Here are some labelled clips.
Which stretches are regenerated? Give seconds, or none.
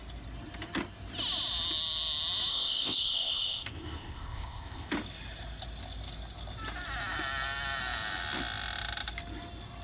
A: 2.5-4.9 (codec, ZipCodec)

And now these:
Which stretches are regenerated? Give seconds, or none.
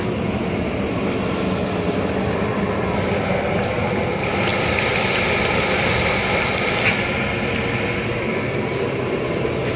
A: none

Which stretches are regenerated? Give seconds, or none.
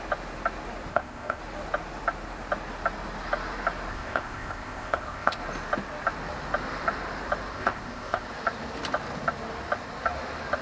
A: 0.9-1.4 (codec, ZipCodec); 3.9-5.4; 7.5-8.3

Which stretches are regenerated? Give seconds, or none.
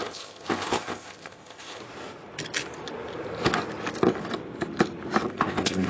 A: 0.0-1.8 (codec, ZipCodec); 5.3-5.9